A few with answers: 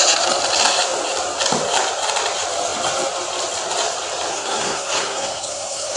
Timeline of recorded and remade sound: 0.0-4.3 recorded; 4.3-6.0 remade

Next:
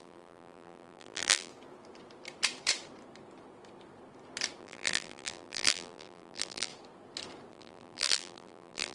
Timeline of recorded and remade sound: 0.0-1.5 remade; 1.5-4.6 recorded; 4.6-6.7 remade; 6.7-7.5 recorded; 7.5-8.9 remade

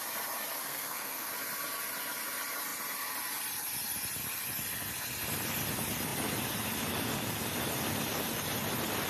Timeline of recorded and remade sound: 0.0-0.6 recorded; 0.6-1.3 remade; 1.3-9.1 recorded

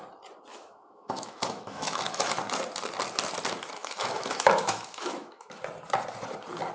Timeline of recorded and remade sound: 0.0-0.5 recorded; 0.5-2.4 remade; 2.4-3.8 recorded; 3.8-5.6 remade; 5.6-6.7 recorded